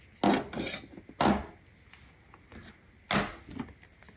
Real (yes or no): yes